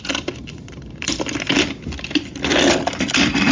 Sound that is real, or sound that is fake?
real